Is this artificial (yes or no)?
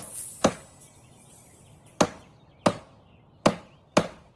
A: no